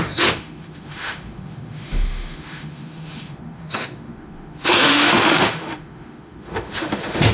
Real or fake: fake